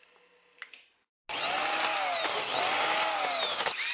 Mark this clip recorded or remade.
recorded